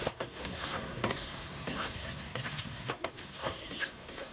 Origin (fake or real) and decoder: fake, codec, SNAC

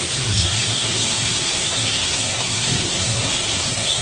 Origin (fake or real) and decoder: fake, codec, SNAC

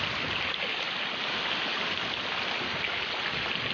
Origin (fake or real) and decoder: real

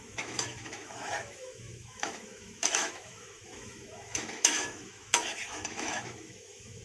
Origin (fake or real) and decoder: fake, autoencoder, DAC-VAE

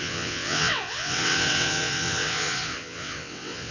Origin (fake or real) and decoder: fake, vocoder, WaveNeXt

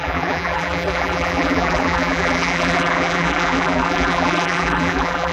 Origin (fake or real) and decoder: fake, vocoder, BigVGAN v2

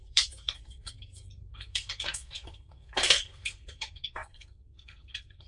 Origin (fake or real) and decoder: fake, codec, SNAC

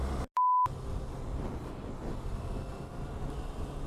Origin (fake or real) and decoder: real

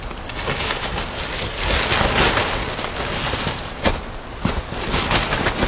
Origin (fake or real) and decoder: real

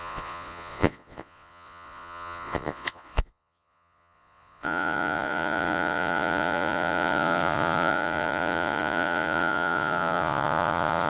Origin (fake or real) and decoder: fake, vocoder, Vocos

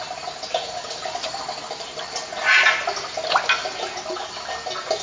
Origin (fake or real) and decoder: real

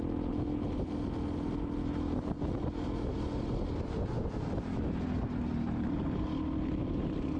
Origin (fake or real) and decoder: real